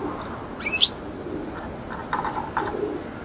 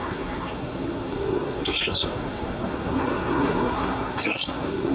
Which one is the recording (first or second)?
first